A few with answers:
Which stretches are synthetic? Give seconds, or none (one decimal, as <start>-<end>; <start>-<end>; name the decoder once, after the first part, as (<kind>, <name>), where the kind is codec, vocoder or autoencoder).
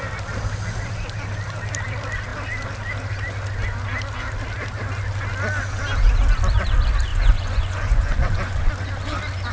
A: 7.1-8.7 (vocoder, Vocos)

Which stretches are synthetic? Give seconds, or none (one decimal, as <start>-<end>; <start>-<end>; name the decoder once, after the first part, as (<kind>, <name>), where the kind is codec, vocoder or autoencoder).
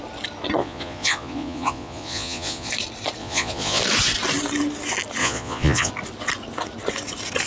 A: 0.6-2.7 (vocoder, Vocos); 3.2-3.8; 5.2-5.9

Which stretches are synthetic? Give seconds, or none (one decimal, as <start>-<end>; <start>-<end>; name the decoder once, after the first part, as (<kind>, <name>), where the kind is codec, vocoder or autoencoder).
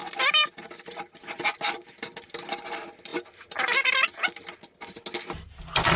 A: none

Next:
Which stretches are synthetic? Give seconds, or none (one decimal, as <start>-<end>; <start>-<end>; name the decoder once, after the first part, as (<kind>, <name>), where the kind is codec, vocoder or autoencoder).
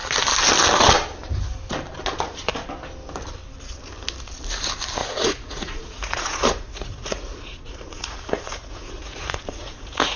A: 5.0-10.2 (vocoder, Vocos)